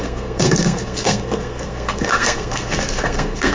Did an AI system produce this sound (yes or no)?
yes